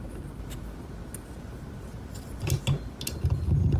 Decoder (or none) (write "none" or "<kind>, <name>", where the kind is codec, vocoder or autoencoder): none